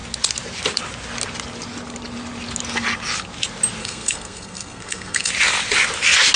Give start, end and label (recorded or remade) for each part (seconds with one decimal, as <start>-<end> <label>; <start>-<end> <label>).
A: 0.0-3.8 recorded; 3.8-5.3 remade; 5.3-6.4 recorded